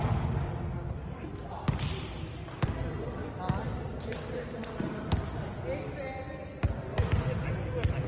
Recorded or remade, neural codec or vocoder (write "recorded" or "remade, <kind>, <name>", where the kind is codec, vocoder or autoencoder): recorded